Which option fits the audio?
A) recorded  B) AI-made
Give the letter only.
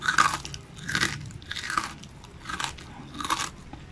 A